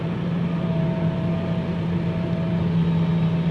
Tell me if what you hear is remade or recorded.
recorded